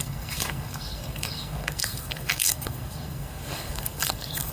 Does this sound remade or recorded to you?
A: remade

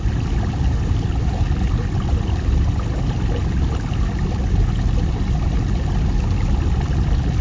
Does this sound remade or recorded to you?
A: recorded